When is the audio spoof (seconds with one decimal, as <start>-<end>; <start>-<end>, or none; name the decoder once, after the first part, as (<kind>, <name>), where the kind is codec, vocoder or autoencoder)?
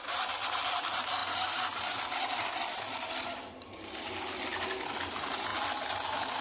none